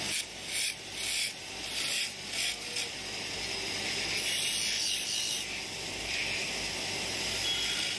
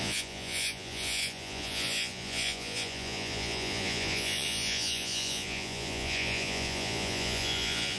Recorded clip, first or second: first